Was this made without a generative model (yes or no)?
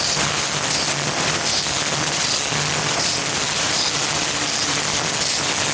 yes